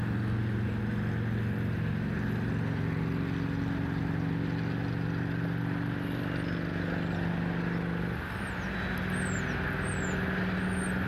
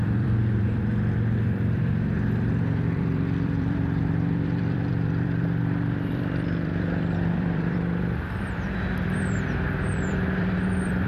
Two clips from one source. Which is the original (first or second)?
first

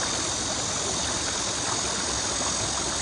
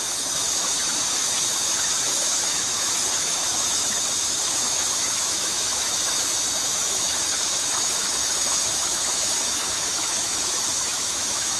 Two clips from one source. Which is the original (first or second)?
first